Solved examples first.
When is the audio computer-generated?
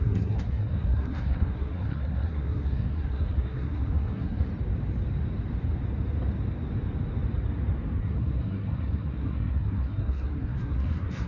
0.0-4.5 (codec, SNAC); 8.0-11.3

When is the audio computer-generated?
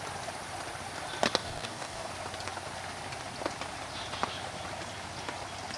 1.4-2.1 (codec, DAC)